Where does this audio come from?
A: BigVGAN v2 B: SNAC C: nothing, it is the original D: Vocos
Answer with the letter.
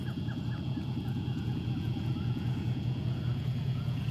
D